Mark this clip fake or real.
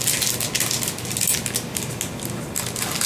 real